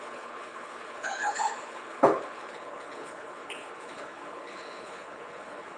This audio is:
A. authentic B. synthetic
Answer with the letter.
B